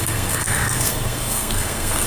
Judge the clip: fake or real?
fake